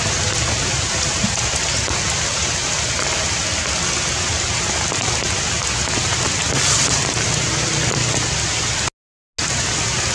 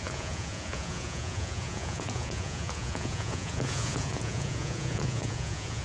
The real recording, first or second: first